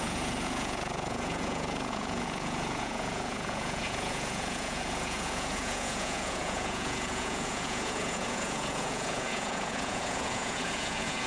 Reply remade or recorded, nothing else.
remade